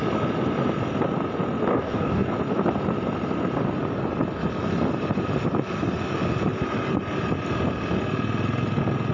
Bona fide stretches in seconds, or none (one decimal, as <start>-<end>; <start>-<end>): 0.0-1.7; 2.3-9.1